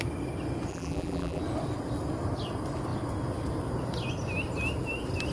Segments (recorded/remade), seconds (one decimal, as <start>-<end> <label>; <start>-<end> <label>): 0.0-0.7 recorded; 0.7-1.4 remade; 1.4-5.3 recorded